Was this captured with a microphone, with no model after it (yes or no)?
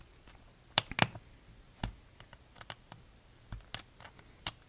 yes